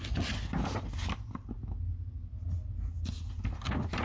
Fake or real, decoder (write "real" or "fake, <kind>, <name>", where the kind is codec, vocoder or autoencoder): real